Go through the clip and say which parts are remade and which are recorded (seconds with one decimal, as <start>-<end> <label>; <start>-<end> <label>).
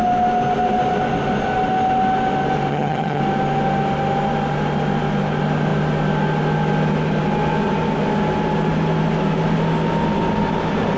0.0-2.7 recorded; 2.7-3.2 remade; 3.2-11.0 recorded